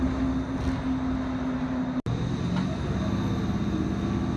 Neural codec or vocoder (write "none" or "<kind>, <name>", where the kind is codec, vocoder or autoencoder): none